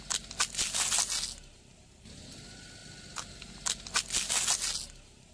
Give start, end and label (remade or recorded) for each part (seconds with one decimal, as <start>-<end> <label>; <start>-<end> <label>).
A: 0.0-5.3 recorded